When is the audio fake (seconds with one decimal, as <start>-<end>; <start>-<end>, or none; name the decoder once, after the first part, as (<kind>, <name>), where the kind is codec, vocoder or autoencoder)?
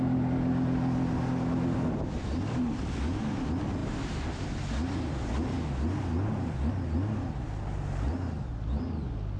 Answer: none